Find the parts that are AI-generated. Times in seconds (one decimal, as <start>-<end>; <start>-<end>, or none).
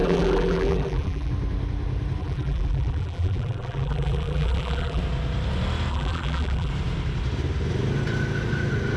0.0-1.3; 2.2-5.0; 5.9-6.7